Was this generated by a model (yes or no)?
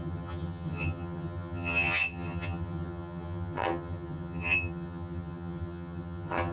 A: yes